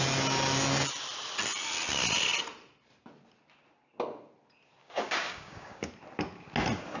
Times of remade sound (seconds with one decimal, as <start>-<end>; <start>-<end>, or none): 4.8-5.9